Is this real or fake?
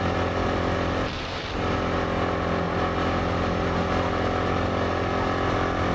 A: real